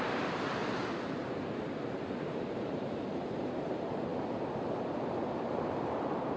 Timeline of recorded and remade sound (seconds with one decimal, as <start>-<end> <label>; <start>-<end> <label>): 0.0-0.6 remade; 0.6-1.9 recorded; 1.9-4.1 remade; 4.1-5.0 recorded; 5.0-6.4 remade